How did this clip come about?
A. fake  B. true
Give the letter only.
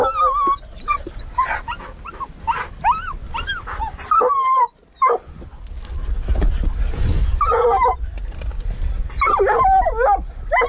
B